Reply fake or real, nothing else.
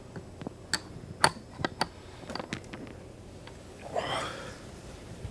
real